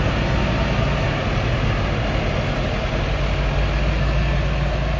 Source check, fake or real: real